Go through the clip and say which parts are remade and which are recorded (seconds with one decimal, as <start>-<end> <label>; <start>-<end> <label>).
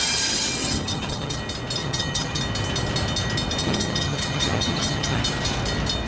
0.0-0.6 recorded; 0.6-1.4 remade; 1.4-1.8 recorded; 1.8-2.4 remade; 2.4-3.6 recorded; 3.6-5.2 remade; 5.2-6.1 recorded